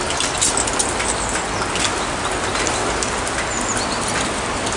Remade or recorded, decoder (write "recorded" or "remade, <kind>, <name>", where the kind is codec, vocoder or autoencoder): recorded